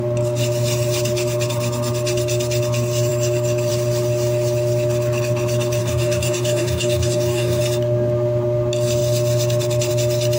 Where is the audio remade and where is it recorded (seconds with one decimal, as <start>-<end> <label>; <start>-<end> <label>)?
0.0-5.8 recorded; 5.8-7.6 remade; 7.6-10.4 recorded